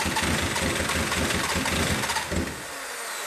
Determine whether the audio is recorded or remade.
recorded